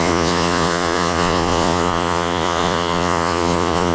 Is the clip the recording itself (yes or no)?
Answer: no